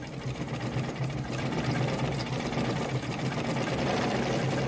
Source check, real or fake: real